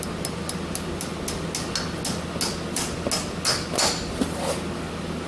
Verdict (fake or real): real